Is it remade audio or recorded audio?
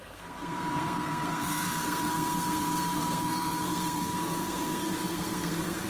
remade